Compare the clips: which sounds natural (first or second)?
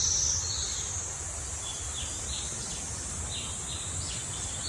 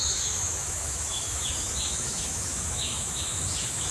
first